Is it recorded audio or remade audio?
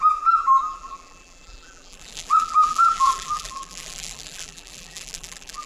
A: remade